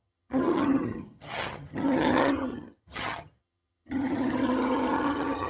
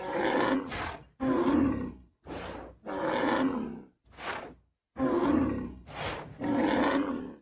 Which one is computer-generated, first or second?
first